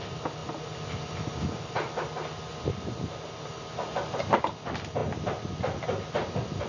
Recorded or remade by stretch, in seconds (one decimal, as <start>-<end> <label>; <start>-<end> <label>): 0.0-6.7 recorded